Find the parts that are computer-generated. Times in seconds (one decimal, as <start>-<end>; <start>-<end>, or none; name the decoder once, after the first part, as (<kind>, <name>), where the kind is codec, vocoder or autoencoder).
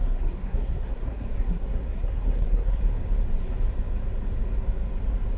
0.0-2.8 (codec, SNAC)